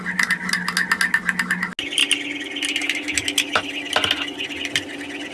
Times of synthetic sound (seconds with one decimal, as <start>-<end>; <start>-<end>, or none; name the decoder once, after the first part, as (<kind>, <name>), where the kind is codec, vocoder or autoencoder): none